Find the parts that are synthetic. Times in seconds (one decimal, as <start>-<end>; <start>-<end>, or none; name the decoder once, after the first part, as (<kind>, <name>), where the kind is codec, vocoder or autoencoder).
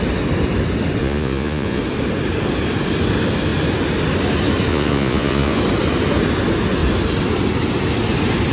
1.0-1.8 (vocoder, Vocos); 4.7-5.6